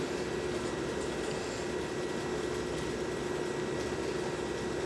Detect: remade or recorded recorded